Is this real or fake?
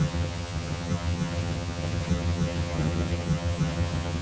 fake